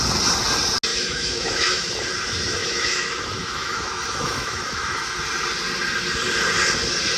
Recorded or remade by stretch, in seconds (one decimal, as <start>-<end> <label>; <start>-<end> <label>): 0.0-0.9 recorded; 0.9-1.9 remade; 1.9-2.6 recorded; 2.6-5.2 remade; 5.2-7.2 recorded